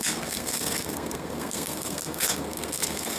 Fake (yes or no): yes